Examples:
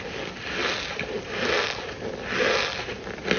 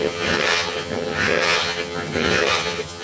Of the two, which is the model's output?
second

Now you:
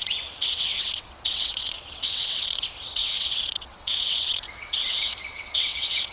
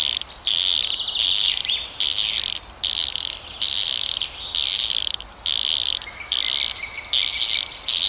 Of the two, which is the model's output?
first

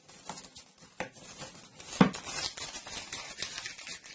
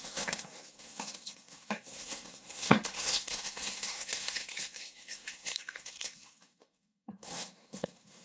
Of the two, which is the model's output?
second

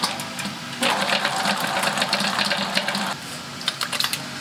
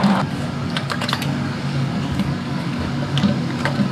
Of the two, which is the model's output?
second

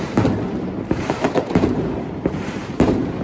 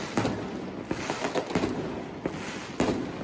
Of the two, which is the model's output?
first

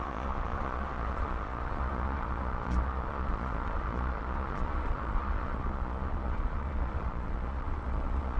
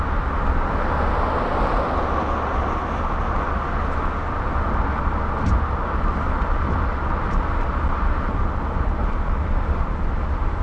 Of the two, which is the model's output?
first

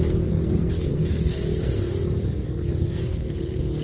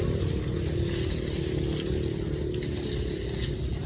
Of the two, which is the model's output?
first